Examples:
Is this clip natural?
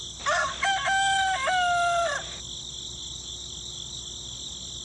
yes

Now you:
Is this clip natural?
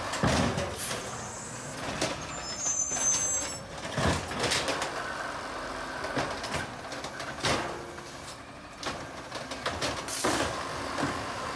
yes